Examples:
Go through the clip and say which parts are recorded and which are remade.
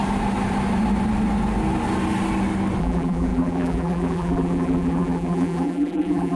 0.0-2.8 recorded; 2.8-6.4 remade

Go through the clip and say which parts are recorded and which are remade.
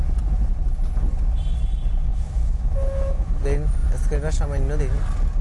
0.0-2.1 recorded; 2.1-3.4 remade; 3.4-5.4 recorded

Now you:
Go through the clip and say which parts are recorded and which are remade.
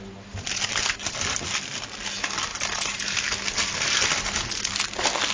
0.0-5.3 recorded